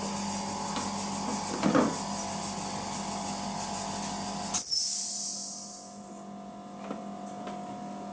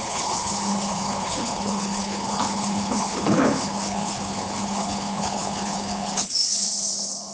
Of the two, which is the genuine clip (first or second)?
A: first